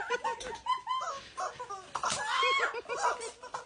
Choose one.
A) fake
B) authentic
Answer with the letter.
B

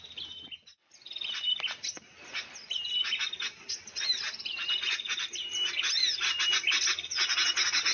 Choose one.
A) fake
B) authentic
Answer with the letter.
B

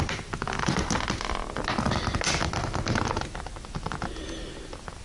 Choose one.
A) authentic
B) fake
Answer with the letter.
A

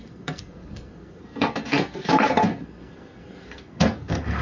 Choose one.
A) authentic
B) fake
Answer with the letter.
B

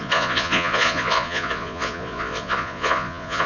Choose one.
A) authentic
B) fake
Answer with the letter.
B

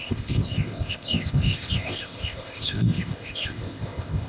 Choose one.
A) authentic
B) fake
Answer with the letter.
B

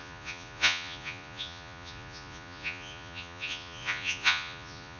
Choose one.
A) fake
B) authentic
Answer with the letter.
A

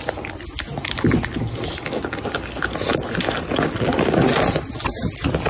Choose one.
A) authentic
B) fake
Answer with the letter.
A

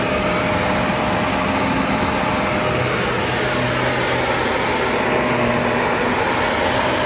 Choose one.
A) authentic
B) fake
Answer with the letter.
A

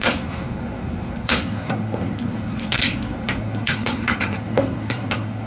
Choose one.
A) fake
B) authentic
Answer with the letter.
A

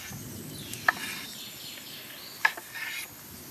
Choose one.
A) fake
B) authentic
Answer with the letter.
B